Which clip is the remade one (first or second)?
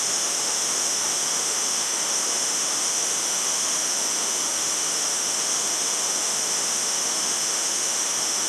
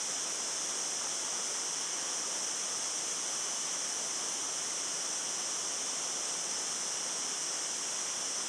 first